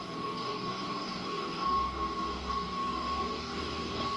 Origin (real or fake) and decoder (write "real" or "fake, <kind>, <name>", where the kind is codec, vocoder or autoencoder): fake, codec, DAC